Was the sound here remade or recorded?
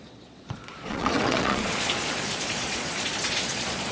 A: remade